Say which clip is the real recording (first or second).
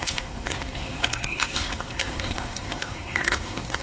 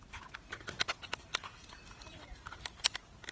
second